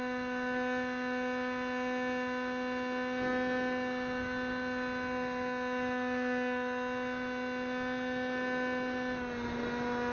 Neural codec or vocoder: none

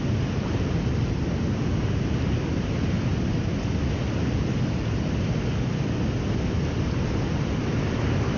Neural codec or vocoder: none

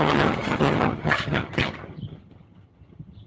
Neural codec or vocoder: vocoder, HiFi-GAN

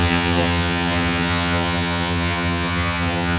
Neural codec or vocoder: vocoder, HiFi-GAN